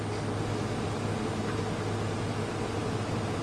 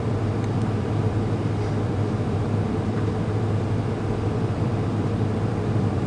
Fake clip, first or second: second